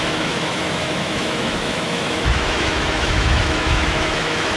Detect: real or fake fake